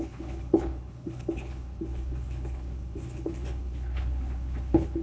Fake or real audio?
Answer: fake